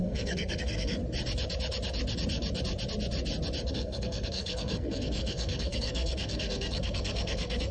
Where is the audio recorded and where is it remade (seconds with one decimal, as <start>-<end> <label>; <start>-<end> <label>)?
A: 0.0-1.0 remade; 1.0-3.7 recorded; 3.7-7.7 remade